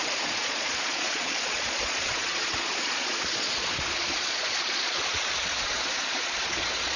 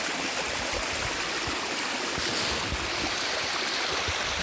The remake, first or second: first